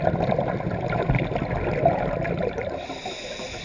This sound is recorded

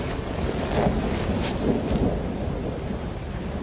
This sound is recorded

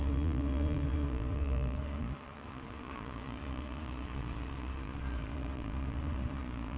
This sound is remade